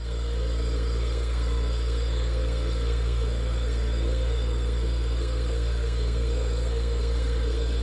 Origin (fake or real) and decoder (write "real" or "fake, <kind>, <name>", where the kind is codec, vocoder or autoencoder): fake, codec, SNAC